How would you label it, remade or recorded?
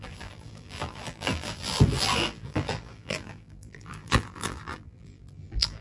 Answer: remade